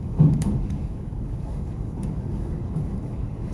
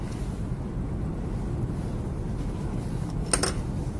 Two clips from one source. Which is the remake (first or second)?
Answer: first